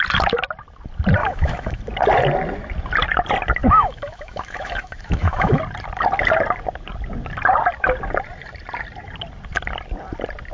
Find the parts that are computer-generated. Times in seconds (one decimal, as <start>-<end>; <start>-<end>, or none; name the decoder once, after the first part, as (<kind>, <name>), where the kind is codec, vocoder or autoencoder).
1.2-1.8 (autoencoder, DAC-VAE); 3.6-5.6